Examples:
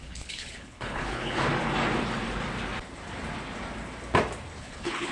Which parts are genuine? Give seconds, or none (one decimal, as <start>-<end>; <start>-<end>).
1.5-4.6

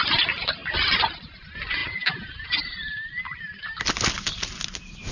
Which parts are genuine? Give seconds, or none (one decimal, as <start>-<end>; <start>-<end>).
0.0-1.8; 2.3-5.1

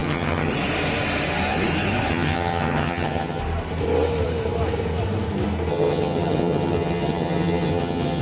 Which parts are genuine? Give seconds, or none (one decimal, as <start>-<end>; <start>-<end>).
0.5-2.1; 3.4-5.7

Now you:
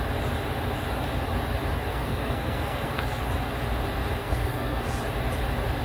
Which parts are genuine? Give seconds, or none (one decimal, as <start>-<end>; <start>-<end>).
0.0-1.9; 3.2-4.2; 5.0-5.8

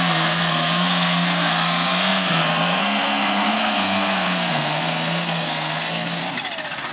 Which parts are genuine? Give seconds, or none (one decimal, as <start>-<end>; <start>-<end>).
6.2-6.9

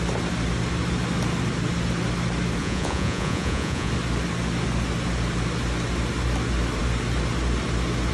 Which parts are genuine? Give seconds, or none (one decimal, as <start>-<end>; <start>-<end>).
0.0-2.6; 3.9-8.1

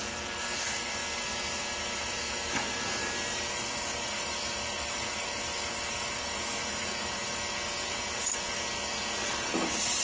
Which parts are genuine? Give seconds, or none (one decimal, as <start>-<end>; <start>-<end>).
1.0-3.5; 7.2-9.5